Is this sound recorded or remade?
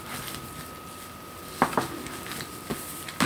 recorded